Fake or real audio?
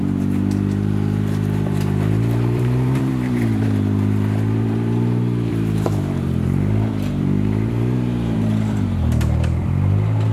fake